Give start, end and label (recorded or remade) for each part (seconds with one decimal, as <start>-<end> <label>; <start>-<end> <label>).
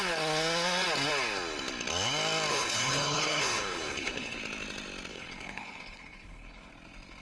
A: 0.0-2.5 recorded; 2.5-4.4 remade; 4.4-5.1 recorded; 5.1-6.7 remade; 6.7-7.2 recorded